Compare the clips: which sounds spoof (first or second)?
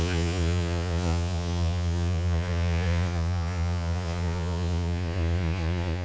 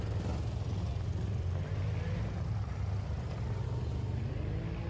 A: first